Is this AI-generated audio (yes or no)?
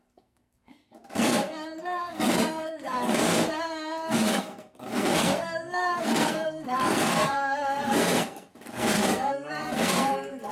yes